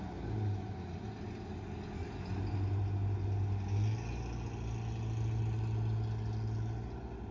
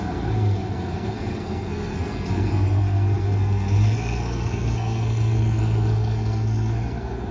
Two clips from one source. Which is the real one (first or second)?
first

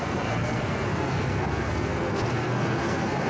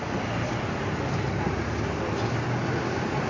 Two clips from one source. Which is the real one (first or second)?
second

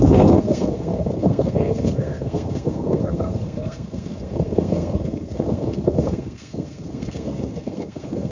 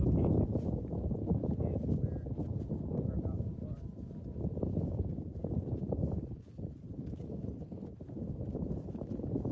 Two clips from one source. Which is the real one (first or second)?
second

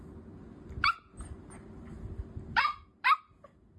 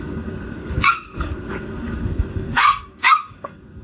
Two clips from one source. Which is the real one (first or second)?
first